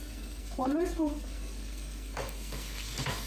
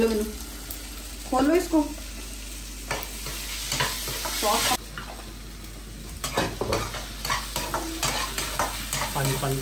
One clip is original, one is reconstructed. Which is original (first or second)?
second